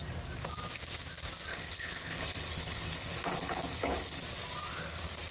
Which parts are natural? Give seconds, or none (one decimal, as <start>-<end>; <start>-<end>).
0.0-1.5; 4.2-5.3